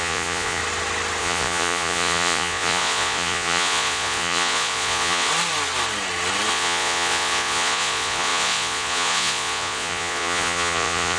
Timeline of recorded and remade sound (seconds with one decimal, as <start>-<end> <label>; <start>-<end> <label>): 0.0-0.6 remade; 0.6-1.2 recorded; 1.2-5.3 remade; 5.3-6.5 recorded; 6.5-11.2 remade